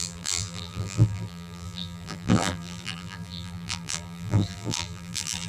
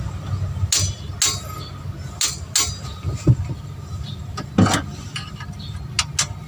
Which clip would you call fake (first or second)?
first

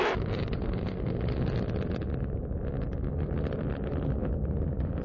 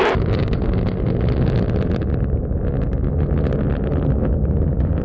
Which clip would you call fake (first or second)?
first